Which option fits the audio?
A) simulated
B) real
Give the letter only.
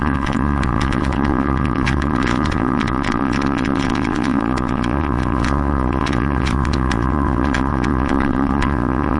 A